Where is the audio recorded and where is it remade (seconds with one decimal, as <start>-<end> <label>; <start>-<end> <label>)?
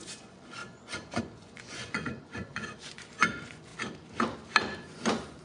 0.0-3.7 remade; 3.7-4.8 recorded; 4.8-5.4 remade